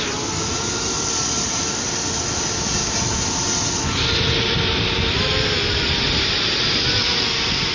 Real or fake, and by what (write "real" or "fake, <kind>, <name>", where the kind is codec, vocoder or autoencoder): real